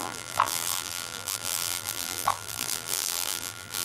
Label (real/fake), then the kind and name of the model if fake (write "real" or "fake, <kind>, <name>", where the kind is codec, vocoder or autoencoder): fake, vocoder, BigVGAN v2